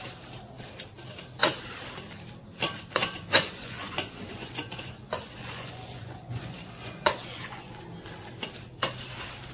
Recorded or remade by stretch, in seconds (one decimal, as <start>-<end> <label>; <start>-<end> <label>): 0.0-3.0 recorded; 3.0-7.7 remade; 7.7-9.5 recorded

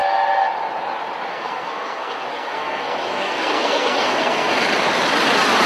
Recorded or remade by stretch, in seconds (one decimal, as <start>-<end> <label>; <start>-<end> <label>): 0.0-1.3 recorded; 1.3-4.5 remade; 4.5-5.7 recorded

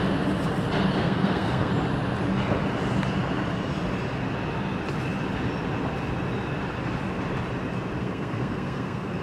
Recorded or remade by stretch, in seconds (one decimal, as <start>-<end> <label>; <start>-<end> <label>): 0.0-1.0 recorded; 1.0-1.7 remade; 1.7-8.0 recorded; 8.0-9.2 remade

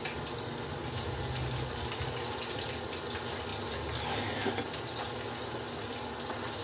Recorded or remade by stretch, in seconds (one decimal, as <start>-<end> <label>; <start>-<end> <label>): 0.0-6.6 recorded

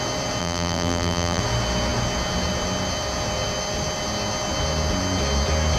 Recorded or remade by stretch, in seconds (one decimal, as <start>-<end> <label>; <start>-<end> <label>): 0.0-0.4 recorded; 0.4-1.4 remade; 1.4-5.8 recorded

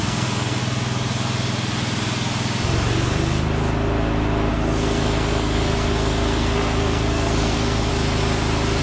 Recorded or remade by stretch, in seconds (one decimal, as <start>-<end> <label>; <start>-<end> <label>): 0.0-0.6 remade; 0.6-4.5 recorded; 4.5-7.9 remade; 7.9-8.8 recorded

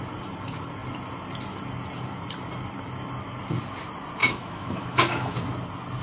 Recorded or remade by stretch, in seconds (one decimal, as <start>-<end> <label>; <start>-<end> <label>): 0.0-4.2 recorded; 4.2-5.4 remade; 5.4-6.0 recorded

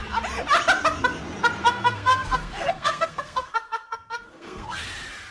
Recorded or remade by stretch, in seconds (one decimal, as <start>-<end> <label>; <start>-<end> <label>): 0.0-1.6 recorded; 1.6-4.8 remade; 4.8-5.3 recorded